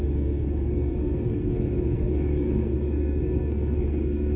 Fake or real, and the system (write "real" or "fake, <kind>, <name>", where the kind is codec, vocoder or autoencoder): fake, codec, SNAC